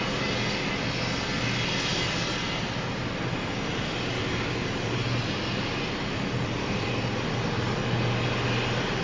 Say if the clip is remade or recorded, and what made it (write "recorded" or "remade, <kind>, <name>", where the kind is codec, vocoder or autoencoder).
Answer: recorded